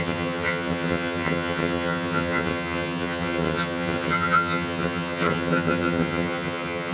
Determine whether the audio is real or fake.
fake